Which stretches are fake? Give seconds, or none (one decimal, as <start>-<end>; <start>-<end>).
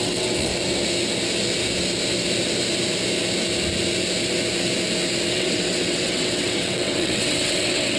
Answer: 0.0-0.5; 5.3-8.0